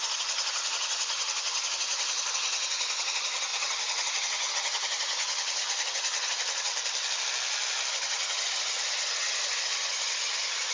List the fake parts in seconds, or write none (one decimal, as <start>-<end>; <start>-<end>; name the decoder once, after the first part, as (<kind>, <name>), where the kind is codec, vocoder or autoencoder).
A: 0.0-6.7 (vocoder, HiFi-GAN); 7.9-10.7